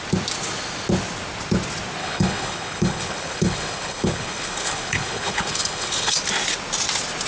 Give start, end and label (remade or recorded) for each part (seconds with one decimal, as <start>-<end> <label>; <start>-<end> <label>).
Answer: 0.0-2.0 recorded; 2.0-6.1 remade; 6.1-7.3 recorded